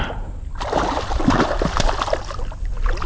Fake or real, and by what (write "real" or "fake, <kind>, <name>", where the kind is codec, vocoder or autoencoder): real